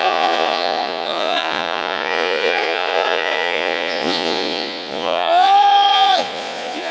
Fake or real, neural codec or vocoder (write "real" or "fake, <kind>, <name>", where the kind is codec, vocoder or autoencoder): fake, vocoder, Vocos